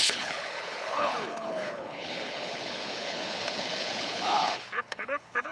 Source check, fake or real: fake